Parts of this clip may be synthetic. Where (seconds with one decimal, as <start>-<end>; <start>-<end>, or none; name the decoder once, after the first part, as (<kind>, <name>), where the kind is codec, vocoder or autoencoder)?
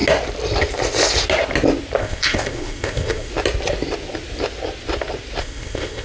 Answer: 2.0-3.3 (codec, ZipCodec); 5.4-6.0